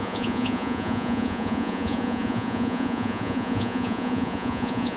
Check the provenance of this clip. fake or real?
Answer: fake